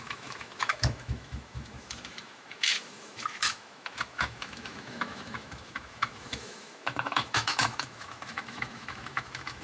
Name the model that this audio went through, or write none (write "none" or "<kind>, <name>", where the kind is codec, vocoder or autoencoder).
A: autoencoder, DAC-VAE